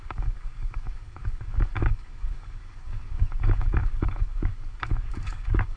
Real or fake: fake